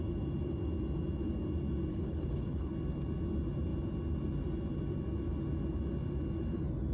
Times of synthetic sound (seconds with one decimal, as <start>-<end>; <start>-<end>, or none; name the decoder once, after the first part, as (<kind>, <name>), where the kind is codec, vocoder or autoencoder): 1.9-2.7 (codec, HILCodec)

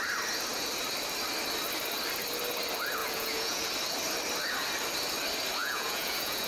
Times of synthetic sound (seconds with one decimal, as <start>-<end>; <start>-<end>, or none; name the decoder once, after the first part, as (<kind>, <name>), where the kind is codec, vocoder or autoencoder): 3.0-3.7 (vocoder, Vocos); 5.6-6.5

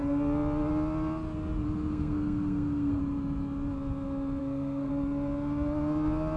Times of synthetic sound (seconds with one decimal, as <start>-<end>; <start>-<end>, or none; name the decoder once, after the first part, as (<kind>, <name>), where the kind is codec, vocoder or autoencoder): 1.9-3.0 (codec, SNAC); 4.4-4.9

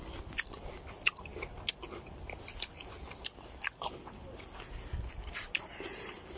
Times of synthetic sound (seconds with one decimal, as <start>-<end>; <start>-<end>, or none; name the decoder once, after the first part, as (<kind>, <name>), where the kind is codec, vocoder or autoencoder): none

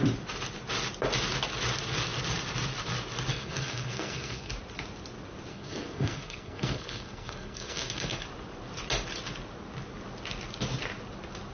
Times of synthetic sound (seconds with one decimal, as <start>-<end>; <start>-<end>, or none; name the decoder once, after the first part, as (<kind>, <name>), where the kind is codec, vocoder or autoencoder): 3.3-4.5 (codec, SNAC); 5.5-8.2

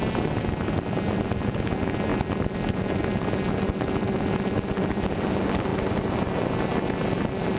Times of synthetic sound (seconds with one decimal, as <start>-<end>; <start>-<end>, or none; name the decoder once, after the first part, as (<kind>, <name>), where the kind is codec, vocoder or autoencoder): none

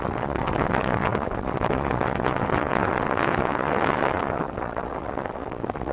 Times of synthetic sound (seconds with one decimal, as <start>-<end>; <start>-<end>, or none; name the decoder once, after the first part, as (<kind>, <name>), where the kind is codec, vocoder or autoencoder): 0.0-5.9 (vocoder, WaveNeXt)

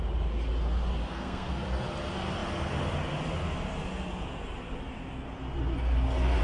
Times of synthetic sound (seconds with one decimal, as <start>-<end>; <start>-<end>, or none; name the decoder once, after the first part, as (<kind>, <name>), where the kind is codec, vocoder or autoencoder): 1.0-1.5 (codec, SNAC)